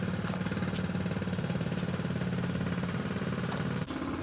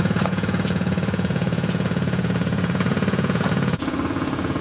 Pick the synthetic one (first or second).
second